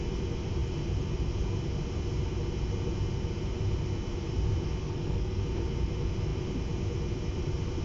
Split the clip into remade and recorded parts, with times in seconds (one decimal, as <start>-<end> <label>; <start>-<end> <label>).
0.0-4.8 recorded; 4.8-5.4 remade; 5.4-7.8 recorded